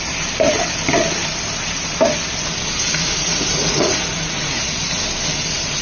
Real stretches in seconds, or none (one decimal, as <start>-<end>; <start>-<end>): 0.0-3.0; 4.6-5.8

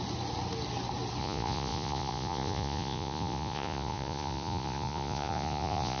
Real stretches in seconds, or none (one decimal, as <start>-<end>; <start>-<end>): 0.0-1.2